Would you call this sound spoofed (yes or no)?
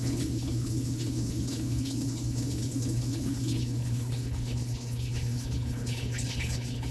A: yes